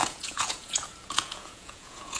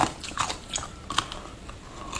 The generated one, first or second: first